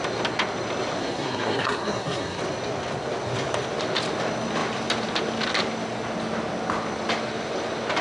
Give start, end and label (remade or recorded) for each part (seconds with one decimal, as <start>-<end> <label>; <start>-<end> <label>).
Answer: 0.0-1.0 recorded; 1.0-2.4 remade; 2.4-8.0 recorded